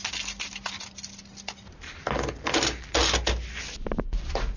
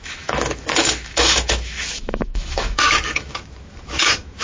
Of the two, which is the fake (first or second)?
second